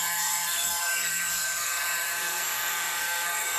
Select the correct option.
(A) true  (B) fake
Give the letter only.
B